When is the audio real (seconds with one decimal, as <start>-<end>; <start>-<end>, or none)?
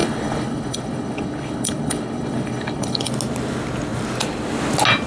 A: 3.1-5.1